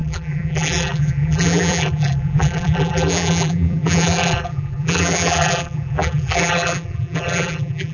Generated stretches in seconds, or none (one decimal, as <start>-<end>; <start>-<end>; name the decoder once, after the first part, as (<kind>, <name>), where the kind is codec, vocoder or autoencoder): 0.0-7.9 (vocoder, BigVGAN v2)